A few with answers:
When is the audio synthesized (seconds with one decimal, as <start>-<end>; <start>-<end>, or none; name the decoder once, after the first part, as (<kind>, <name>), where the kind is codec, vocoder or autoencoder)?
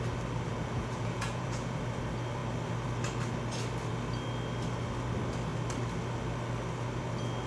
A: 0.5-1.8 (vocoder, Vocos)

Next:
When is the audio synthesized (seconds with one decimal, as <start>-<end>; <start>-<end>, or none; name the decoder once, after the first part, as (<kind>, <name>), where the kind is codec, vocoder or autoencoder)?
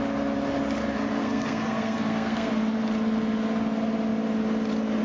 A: 1.2-2.5 (codec, SNAC)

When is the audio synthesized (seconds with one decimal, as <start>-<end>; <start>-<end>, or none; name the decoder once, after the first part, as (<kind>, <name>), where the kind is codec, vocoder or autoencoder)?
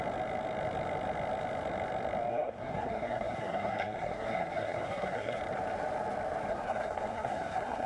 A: 2.3-5.4 (codec, SNAC); 6.5-7.9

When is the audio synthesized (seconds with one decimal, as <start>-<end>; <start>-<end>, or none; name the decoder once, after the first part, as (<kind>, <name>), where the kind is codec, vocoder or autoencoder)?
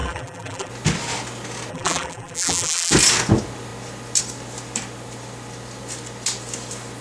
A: 0.0-0.7 (vocoder, BigVGAN v2); 1.7-2.9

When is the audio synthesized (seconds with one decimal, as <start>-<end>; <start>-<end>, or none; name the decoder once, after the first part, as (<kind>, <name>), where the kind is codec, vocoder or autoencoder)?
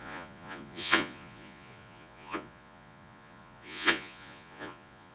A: 0.0-5.1 (vocoder, Vocos)